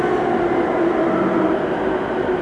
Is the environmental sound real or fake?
real